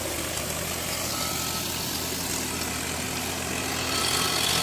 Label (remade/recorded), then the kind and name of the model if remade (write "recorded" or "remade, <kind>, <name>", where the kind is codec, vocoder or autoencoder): recorded